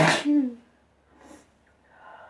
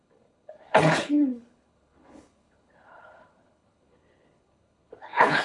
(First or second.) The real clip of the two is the first